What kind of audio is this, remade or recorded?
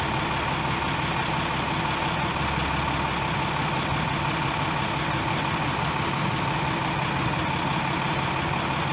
recorded